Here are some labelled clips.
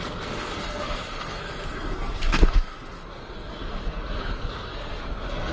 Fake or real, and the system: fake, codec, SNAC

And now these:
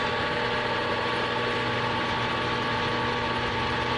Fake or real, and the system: real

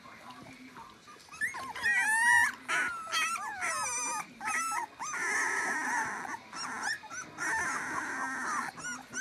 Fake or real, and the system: real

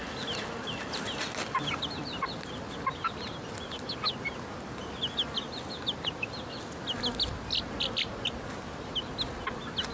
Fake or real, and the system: real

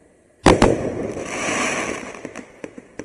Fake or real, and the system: real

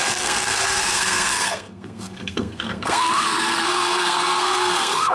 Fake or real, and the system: fake, codec, SNAC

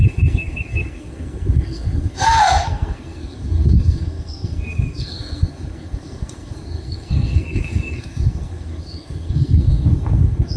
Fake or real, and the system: fake, codec, SNAC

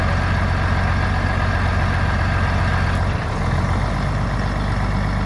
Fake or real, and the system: real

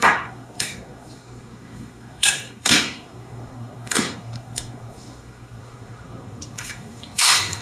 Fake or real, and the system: fake, codec, SNAC